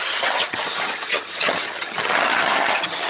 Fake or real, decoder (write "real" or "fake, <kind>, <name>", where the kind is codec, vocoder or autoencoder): fake, vocoder, HiFi-GAN